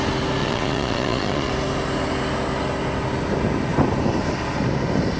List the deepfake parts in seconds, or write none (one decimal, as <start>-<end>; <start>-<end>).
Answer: 0.4-1.5